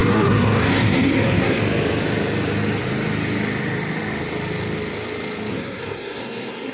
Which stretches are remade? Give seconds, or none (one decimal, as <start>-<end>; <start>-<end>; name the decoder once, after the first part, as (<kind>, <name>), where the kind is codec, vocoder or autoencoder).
0.0-1.6 (codec, SNAC); 5.5-6.7